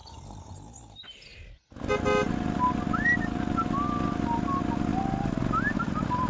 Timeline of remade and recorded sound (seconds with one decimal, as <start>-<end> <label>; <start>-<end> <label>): 0.0-6.3 recorded